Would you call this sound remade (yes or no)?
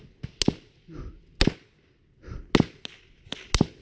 no